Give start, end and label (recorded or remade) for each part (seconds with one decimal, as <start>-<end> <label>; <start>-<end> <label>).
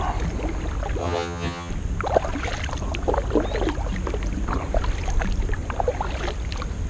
0.0-1.0 recorded; 1.0-1.7 remade; 1.7-6.9 recorded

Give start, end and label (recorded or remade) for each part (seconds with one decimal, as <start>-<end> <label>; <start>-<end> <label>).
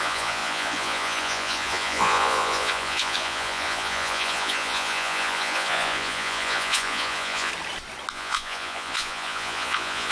0.0-7.5 remade; 7.5-8.1 recorded; 8.1-10.1 remade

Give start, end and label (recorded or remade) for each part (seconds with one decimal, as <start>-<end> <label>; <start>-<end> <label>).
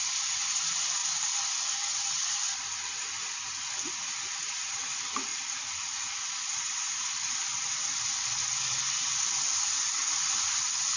0.0-5.3 recorded; 5.3-6.3 remade; 6.3-11.0 recorded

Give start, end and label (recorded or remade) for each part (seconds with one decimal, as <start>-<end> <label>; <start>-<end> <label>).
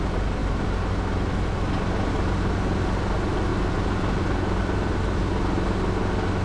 0.0-6.4 recorded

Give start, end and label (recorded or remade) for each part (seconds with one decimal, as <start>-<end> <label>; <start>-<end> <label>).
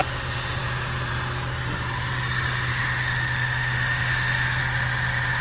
0.0-2.7 recorded; 2.7-4.6 remade; 4.6-5.4 recorded